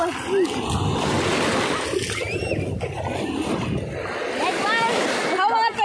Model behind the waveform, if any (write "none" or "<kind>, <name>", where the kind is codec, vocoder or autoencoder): none